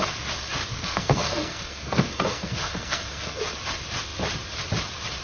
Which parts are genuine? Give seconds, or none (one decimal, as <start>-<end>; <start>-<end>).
0.0-0.6; 3.4-5.2